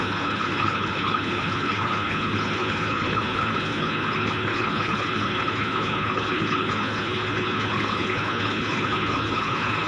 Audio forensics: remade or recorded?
remade